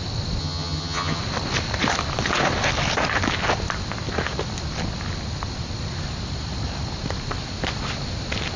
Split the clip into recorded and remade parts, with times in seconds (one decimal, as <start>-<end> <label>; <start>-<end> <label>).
0.0-0.4 recorded; 0.4-1.2 remade; 1.2-8.6 recorded